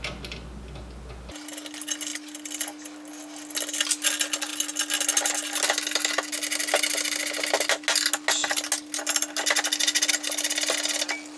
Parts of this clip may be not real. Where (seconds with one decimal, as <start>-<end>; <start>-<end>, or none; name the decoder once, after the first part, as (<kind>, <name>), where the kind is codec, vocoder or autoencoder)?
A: none